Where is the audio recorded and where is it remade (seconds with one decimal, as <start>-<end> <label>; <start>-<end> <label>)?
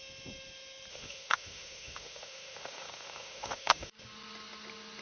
0.0-0.9 recorded; 0.9-3.9 remade; 3.9-5.0 recorded